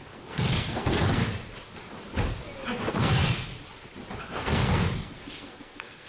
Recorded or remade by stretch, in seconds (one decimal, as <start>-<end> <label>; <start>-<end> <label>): 0.0-1.2 remade; 1.2-2.9 recorded; 2.9-3.5 remade; 3.5-4.2 recorded; 4.2-6.1 remade